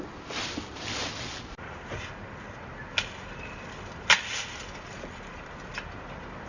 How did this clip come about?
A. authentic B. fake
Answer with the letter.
A